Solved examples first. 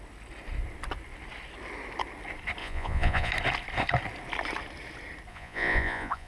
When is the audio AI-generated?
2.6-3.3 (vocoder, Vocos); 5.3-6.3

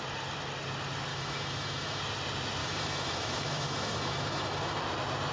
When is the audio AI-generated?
1.1-2.0 (autoencoder, DAC-VAE); 2.6-4.8

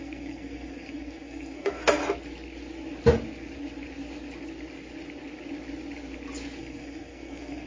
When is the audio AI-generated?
0.0-2.0 (codec, SNAC); 6.6-7.7

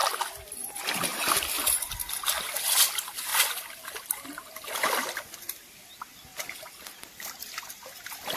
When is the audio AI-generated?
none

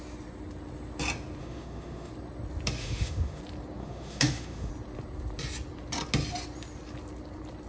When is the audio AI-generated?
1.4-2.1 (autoencoder, DAC-VAE); 2.8-3.4; 3.8-4.7